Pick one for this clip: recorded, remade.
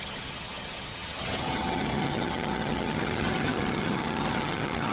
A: remade